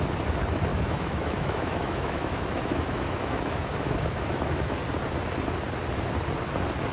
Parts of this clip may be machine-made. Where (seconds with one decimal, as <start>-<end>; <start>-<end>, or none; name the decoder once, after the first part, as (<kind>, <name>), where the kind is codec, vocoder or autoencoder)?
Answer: 0.7-4.8 (autoencoder, DAC-VAE)